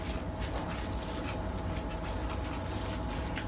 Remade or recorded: recorded